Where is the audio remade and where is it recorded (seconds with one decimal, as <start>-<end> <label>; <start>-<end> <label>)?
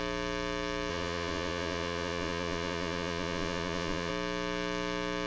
0.0-0.9 recorded; 0.9-4.1 remade; 4.1-5.3 recorded